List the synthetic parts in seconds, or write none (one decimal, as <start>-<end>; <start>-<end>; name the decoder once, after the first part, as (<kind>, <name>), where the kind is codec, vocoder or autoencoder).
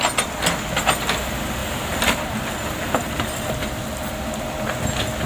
1.6-4.1 (vocoder, BigVGAN v2)